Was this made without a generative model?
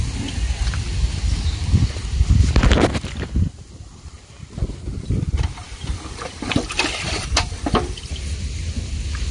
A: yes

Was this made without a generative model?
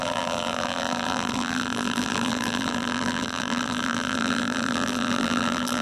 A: no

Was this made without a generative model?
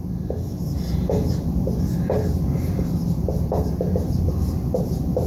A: yes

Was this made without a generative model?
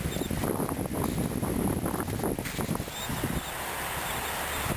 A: yes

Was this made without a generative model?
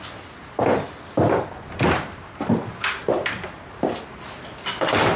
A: yes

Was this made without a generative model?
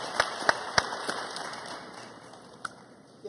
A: no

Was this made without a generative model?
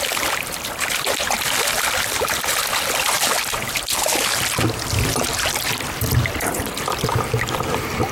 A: yes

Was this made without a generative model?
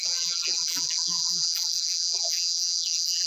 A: no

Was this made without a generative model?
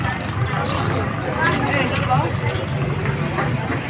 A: yes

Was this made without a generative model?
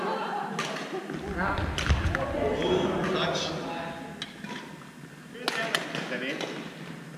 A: yes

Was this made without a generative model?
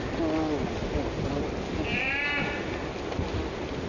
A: yes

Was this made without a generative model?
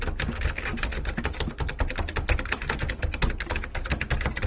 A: yes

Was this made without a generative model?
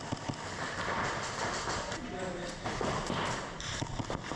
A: yes